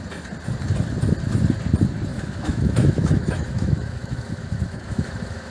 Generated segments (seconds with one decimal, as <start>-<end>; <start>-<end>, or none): 2.1-5.5